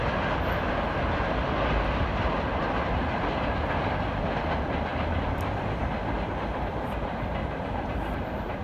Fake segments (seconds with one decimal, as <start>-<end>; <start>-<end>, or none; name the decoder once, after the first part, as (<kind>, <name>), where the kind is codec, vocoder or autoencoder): none